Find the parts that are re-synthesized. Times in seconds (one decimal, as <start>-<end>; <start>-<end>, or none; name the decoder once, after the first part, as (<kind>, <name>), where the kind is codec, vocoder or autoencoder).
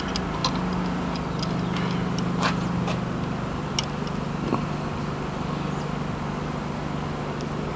none